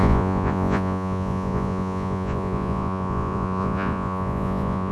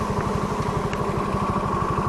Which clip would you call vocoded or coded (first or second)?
first